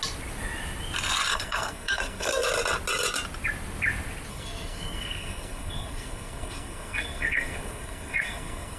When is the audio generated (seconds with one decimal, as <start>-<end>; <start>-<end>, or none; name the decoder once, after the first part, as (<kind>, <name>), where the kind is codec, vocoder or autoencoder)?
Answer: 1.3-2.5 (codec, SNAC); 4.3-8.8

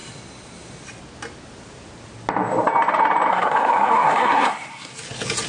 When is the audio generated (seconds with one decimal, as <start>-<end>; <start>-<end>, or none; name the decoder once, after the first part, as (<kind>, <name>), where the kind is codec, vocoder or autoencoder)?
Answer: 3.3-4.9 (codec, SNAC)

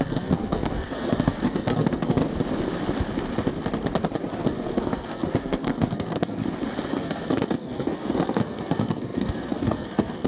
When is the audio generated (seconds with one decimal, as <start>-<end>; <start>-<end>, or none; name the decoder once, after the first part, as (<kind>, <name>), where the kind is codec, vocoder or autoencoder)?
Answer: 0.0-2.2 (codec, SNAC); 4.4-6.4; 6.9-10.3

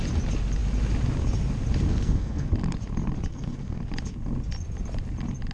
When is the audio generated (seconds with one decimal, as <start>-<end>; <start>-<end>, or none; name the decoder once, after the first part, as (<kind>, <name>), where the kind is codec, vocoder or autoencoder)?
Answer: 1.9-2.5 (codec, SNAC); 3.3-3.8

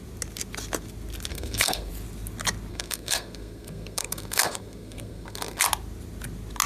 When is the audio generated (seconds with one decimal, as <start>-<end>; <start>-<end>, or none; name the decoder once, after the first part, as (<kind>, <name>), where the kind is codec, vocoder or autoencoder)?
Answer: 1.3-1.9 (codec, SNAC); 2.7-5.6

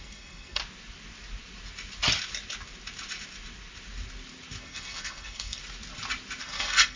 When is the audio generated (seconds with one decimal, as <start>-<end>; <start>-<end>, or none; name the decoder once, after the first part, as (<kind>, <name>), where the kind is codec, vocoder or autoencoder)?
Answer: 0.0-0.6 (codec, SNAC); 4.6-5.6; 6.4-7.0

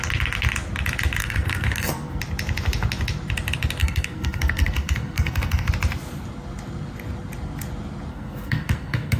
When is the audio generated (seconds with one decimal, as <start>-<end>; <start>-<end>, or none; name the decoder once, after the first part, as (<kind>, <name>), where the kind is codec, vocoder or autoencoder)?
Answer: 1.2-2.2 (codec, SNAC); 3.8-5.7; 8.1-9.2

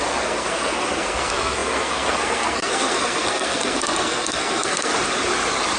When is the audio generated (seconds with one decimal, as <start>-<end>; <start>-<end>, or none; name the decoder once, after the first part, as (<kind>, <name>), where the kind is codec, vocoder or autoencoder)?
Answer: 0.0-4.9 (codec, SNAC)